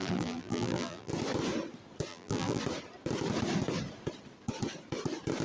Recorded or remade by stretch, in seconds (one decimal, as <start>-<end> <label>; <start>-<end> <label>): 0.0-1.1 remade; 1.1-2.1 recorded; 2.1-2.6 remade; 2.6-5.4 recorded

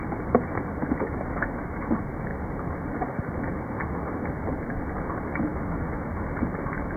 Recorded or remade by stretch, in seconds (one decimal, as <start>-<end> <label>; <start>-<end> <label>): 0.0-0.8 recorded; 0.8-1.8 remade; 1.8-5.5 recorded; 5.5-6.1 remade; 6.1-7.0 recorded

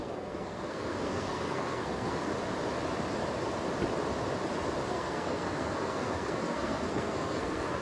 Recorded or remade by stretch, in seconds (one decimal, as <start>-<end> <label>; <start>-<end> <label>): 0.0-2.3 remade; 2.3-4.9 recorded; 4.9-7.8 remade

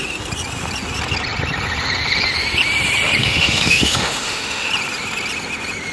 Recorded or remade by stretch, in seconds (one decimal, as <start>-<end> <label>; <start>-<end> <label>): 0.0-3.2 recorded; 3.2-4.7 remade; 4.7-5.9 recorded